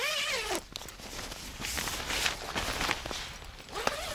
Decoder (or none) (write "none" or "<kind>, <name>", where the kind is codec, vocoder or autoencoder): none